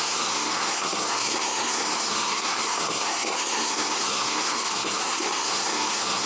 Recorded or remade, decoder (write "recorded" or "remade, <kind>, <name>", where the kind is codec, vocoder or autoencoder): remade, codec, SNAC